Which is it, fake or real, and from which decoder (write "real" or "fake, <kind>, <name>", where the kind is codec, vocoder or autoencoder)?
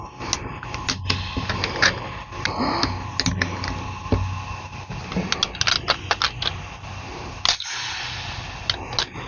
real